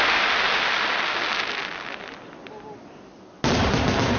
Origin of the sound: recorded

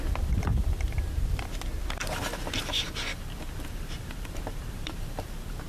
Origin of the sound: remade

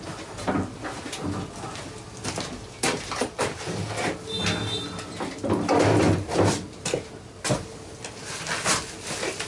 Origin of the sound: recorded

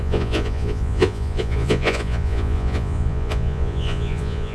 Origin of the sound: remade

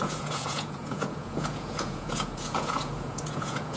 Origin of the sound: remade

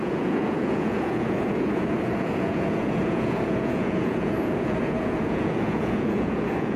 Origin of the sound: remade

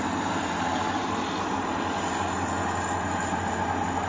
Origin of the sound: recorded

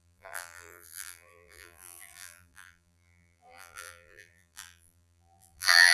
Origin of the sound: remade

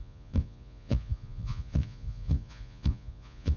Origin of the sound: remade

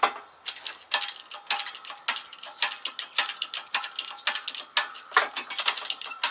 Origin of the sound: recorded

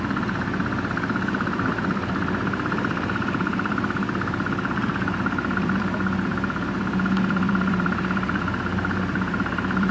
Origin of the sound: remade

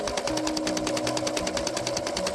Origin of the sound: recorded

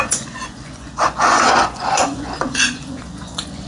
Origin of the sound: remade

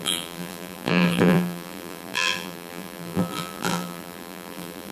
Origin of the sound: remade